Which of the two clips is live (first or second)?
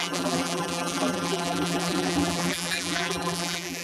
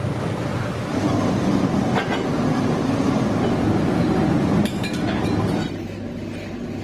second